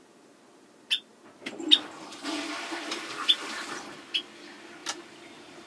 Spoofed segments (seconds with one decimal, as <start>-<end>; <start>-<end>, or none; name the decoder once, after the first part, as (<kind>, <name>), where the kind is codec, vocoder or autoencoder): 4.8-5.7 (vocoder, BigVGAN v2)